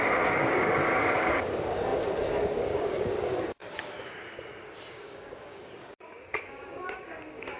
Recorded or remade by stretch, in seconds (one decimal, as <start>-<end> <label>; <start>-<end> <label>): 0.0-3.6 remade; 3.6-4.9 recorded; 4.9-7.6 remade